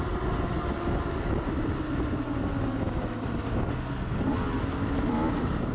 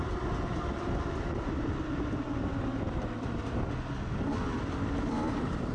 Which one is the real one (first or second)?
first